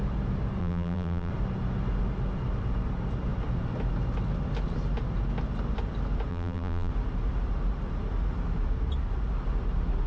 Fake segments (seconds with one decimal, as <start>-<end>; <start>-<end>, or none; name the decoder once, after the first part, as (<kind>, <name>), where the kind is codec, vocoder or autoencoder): 0.6-1.3 (vocoder, BigVGAN v2); 6.3-6.9